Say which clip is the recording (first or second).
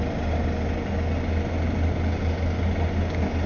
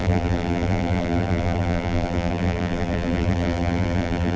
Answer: first